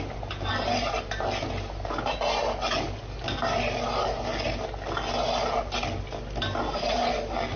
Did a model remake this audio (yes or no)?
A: no